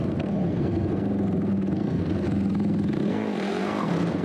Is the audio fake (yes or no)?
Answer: yes